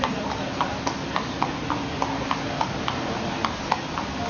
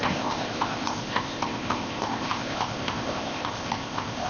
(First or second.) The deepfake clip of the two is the second